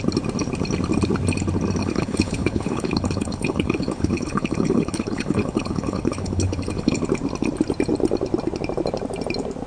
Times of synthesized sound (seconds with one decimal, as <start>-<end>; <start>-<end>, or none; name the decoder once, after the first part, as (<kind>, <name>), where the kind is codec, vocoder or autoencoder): 1.8-7.0 (codec, HILCodec)

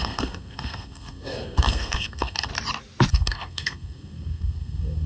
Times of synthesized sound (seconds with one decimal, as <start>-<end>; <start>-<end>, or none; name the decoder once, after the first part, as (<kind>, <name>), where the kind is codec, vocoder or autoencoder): 0.0-2.5 (codec, SNAC); 3.1-5.1

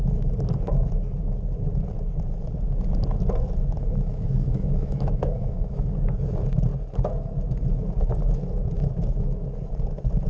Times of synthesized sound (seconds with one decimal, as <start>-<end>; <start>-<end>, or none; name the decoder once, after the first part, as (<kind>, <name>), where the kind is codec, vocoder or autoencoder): 3.8-5.9 (autoencoder, DAC-VAE)

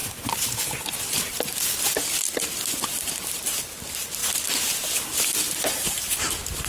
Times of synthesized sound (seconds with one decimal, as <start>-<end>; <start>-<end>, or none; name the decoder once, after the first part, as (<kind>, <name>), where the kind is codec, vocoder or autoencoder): 2.6-4.2 (vocoder, BigVGAN v2); 5.6-6.7

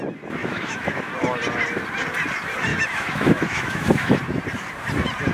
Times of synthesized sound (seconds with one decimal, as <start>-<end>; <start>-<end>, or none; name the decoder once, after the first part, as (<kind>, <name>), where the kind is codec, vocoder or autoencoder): 0.4-1.1 (autoencoder, DAC-VAE); 2.7-4.2

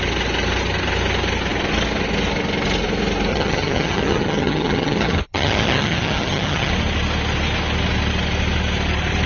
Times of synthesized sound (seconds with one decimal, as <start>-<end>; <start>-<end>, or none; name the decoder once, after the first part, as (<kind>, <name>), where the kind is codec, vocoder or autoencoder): 3.3-6.7 (vocoder, HiFi-GAN)

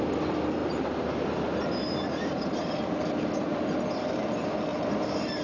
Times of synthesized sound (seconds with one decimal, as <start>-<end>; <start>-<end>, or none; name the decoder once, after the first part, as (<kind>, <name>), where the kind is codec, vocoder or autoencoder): 0.6-3.4 (vocoder, BigVGAN v2); 4.7-5.4

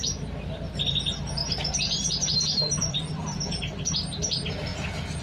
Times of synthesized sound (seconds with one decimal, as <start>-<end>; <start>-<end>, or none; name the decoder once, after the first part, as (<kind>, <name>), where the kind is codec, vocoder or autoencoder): 1.4-3.8 (vocoder, BigVGAN v2)